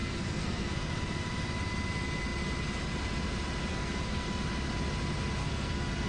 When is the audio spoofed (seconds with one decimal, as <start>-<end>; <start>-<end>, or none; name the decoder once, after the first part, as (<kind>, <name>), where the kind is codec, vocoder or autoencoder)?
0.0-0.9 (codec, SNAC); 3.7-4.4; 5.4-6.1

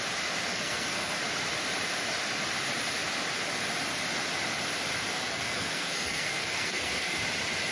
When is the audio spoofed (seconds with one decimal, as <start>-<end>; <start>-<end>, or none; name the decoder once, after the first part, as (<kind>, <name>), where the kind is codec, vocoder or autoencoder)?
0.5-1.2 (codec, SNAC); 5.1-7.2

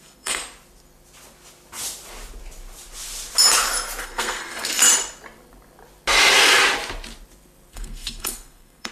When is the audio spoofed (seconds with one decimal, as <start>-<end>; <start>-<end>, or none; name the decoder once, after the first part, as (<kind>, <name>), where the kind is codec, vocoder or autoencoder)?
0.0-0.4 (codec, SNAC); 4.0-4.8; 7.7-8.9

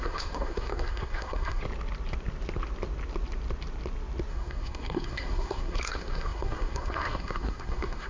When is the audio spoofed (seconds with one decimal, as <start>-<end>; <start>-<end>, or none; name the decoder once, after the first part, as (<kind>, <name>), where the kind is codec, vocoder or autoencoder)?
0.0-1.6 (codec, SNAC); 4.3-8.1